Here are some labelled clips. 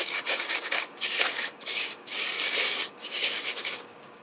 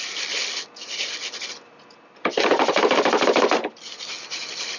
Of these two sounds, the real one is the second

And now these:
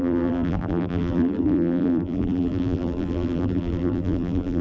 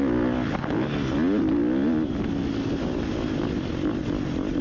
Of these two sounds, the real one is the second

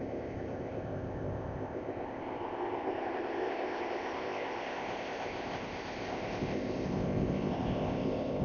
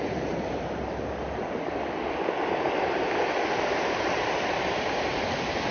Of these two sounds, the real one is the second